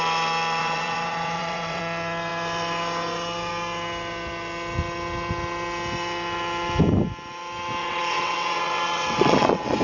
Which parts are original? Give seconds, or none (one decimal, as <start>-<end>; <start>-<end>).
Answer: 0.0-0.6; 1.8-7.8